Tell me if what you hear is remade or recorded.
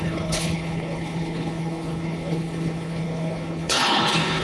remade